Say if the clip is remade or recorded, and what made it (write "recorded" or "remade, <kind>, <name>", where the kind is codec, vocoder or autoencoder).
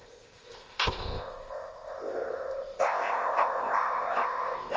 remade, codec, ZipCodec